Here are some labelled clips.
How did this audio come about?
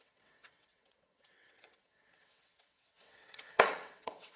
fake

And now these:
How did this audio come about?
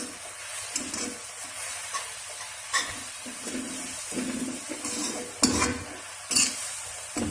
real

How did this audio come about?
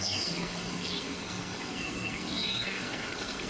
fake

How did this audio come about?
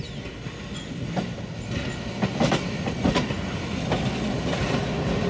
real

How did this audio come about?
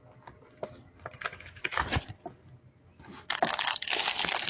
real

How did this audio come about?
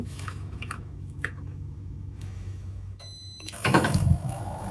fake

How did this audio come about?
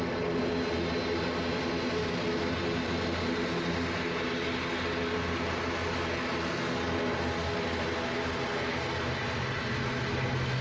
real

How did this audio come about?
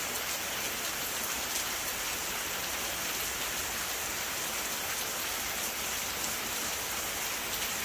real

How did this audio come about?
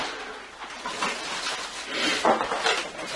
real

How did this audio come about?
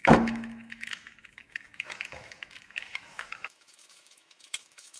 fake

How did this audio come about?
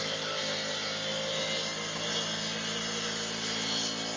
real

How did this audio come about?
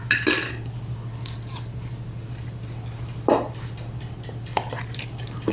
fake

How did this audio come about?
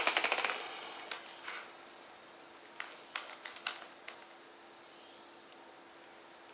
real